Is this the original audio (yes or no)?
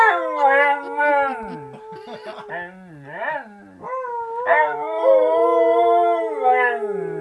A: yes